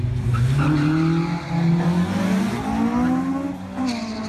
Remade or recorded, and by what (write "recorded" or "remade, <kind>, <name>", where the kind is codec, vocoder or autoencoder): recorded